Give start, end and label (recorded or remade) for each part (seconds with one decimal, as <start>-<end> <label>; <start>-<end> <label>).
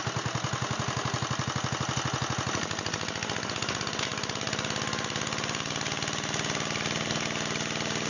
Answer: 0.0-8.1 recorded